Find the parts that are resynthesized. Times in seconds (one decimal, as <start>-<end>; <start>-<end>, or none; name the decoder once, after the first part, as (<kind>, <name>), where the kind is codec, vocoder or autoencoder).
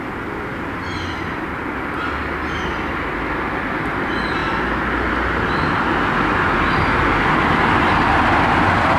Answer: none